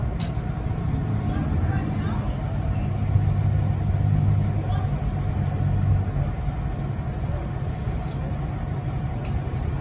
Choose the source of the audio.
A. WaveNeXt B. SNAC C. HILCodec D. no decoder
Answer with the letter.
D